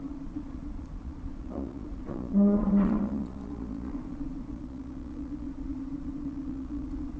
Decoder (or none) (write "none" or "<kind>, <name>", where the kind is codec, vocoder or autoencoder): vocoder, Vocos